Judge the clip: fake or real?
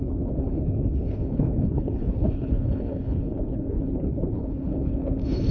fake